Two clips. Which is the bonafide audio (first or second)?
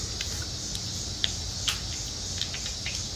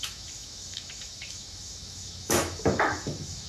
first